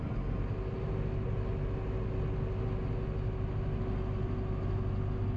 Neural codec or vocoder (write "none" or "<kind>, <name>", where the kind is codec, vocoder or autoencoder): none